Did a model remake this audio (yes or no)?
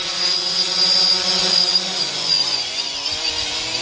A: yes